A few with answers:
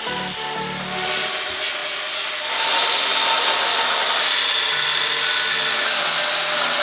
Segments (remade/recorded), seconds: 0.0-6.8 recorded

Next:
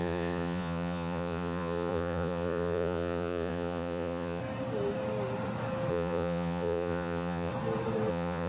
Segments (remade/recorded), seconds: 0.0-4.4 remade; 4.4-5.9 recorded; 5.9-7.5 remade; 7.5-8.1 recorded; 8.1-8.5 remade

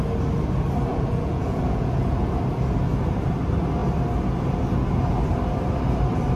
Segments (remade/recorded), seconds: 0.0-0.9 recorded; 0.9-2.3 remade; 2.3-6.4 recorded

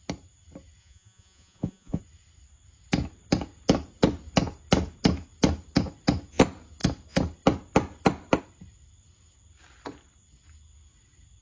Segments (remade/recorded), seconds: 0.0-0.8 recorded; 0.8-2.0 remade; 2.0-11.4 recorded

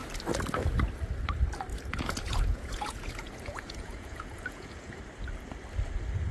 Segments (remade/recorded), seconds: 0.0-1.7 recorded; 1.7-5.0 remade; 5.0-6.3 recorded

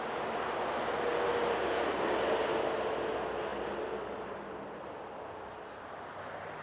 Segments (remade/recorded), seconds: 0.0-6.6 recorded

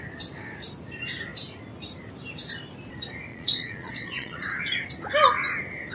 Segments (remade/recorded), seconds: 0.0-3.3 recorded; 3.3-4.6 remade; 4.6-5.9 recorded